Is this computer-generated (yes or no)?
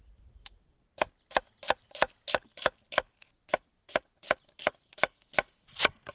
no